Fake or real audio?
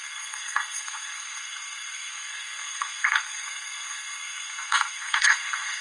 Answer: fake